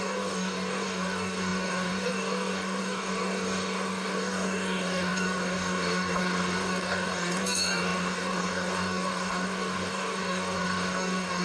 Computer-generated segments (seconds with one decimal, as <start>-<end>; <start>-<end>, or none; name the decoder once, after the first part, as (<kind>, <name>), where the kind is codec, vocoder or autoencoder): 0.0-11.4 (codec, DAC)